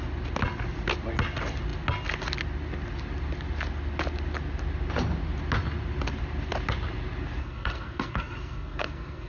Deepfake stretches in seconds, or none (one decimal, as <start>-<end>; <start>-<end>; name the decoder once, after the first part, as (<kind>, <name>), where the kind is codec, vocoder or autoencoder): 7.4-9.3 (codec, SNAC)